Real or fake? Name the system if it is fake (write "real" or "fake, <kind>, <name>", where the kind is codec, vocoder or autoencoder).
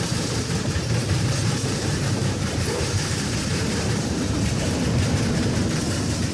fake, vocoder, BigVGAN v2